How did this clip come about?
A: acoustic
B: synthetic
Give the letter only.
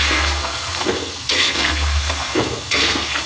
B